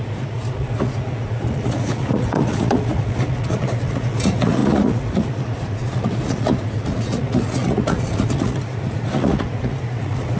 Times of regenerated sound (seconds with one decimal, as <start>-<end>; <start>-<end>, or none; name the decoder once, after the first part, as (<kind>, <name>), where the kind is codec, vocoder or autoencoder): 0.0-10.4 (vocoder, Vocos)